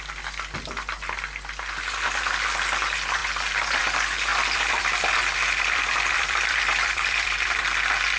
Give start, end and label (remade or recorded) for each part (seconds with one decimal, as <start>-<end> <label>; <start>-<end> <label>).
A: 0.0-4.3 recorded; 4.3-7.6 remade; 7.6-8.2 recorded